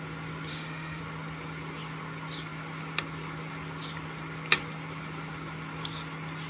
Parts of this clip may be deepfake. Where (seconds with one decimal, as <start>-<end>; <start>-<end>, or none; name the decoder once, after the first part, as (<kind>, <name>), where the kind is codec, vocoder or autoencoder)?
0.5-1.0 (autoencoder, DAC-VAE)